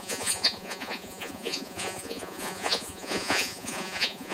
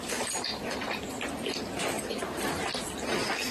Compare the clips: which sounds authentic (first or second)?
second